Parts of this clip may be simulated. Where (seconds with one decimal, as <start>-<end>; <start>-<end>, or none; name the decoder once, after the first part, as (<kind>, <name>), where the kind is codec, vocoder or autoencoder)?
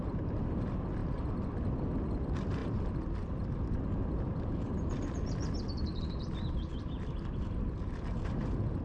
0.0-1.0 (vocoder, BigVGAN v2); 2.1-8.8